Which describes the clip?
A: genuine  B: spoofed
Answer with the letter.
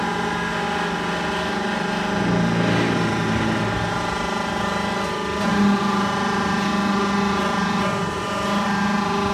A